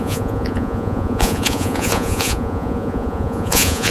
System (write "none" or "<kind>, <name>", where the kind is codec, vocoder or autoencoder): vocoder, Vocos